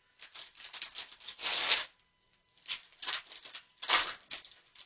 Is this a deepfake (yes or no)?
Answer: no